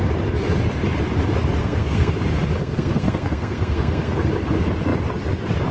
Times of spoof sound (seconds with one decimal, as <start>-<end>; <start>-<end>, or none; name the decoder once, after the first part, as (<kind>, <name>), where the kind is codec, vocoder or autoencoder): 1.6-2.1 (codec, SNAC); 2.6-4.3